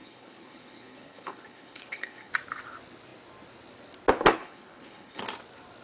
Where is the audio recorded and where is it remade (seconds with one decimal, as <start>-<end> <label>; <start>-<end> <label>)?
0.0-2.3 remade; 2.3-4.4 recorded; 4.4-5.2 remade; 5.2-5.8 recorded